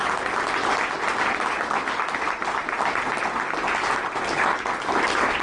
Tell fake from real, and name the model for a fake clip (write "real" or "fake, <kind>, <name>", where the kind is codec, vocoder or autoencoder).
real